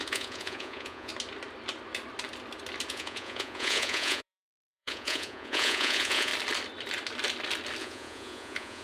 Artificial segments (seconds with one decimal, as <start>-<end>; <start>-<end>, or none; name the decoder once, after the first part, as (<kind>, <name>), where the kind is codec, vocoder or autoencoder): 0.0-1.1 (vocoder, Vocos); 2.9-6.3; 7.8-8.8